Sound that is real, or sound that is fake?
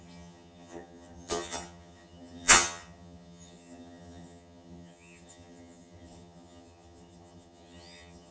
fake